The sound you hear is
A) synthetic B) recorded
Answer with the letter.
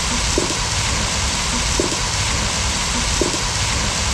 B